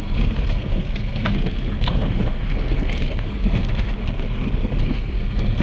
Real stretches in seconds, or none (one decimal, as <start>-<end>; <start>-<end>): none